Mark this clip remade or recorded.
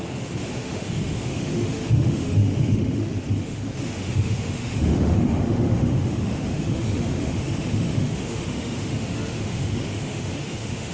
remade